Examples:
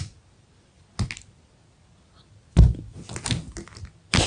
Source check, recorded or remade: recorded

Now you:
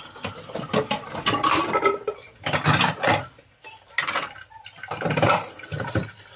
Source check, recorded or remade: recorded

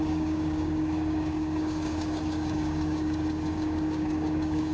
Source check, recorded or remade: remade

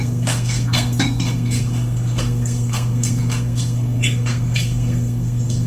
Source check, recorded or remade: remade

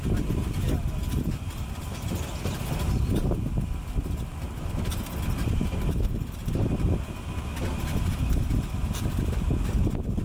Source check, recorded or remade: recorded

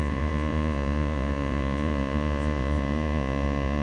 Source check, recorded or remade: remade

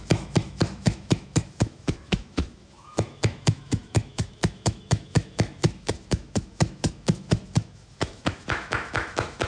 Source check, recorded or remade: remade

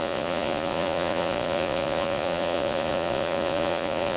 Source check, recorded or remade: remade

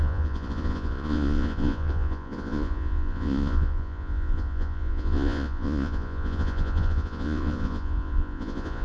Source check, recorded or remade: remade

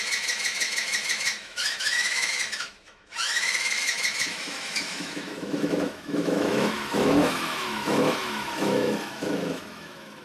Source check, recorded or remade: remade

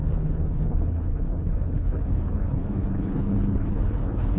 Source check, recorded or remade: remade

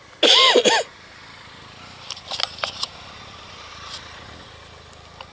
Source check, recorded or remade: recorded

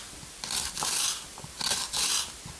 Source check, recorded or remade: recorded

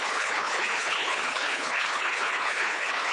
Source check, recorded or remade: remade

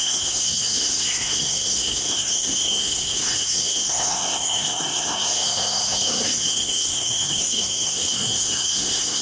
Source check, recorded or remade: remade